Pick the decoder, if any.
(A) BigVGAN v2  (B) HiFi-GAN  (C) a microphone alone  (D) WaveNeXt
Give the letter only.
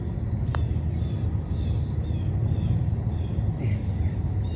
C